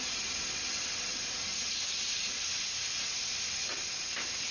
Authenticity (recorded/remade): recorded